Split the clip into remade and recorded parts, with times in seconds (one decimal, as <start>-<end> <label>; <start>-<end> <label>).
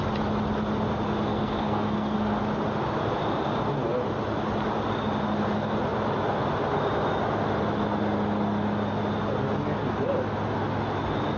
0.0-1.3 recorded; 1.3-2.4 remade; 2.4-11.4 recorded